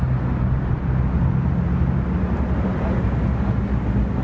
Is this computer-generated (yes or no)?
no